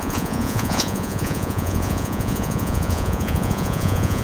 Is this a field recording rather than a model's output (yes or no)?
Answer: no